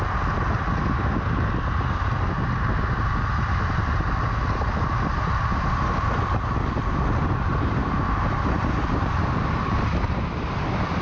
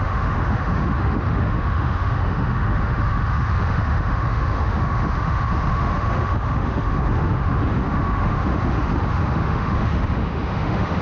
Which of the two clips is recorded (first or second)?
first